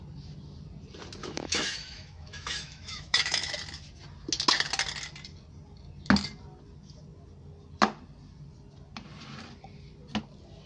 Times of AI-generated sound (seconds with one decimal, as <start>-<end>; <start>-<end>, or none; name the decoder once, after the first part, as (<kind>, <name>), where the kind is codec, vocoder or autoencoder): 1.2-3.5 (autoencoder, DAC-VAE)

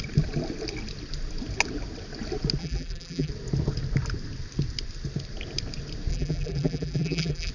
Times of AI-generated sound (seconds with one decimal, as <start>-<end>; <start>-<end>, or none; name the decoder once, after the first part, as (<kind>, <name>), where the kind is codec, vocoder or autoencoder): 2.6-3.3 (vocoder, BigVGAN v2); 6.1-7.5

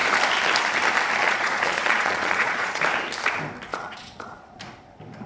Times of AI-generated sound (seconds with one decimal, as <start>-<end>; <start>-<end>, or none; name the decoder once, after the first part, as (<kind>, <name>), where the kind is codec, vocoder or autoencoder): 1.2-2.8 (vocoder, Vocos); 3.7-4.6

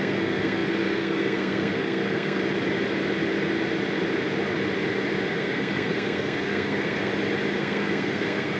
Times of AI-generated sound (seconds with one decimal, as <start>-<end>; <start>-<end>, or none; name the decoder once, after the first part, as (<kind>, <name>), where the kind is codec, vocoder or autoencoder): 0.0-2.4 (codec, SNAC); 5.3-7.1; 7.6-8.6

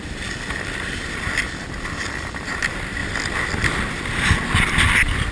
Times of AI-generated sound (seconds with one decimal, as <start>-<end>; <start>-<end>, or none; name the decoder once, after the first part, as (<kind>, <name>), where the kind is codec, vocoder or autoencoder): 0.0-3.0 (vocoder, BigVGAN v2); 4.6-5.3

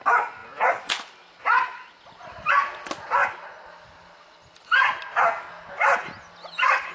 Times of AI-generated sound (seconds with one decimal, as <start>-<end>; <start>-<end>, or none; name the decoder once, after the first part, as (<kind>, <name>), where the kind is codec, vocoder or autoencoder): none

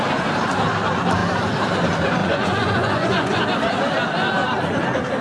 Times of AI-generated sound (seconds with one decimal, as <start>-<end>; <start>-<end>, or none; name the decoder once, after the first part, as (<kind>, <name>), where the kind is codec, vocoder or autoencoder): 2.2-3.4 (vocoder, Vocos)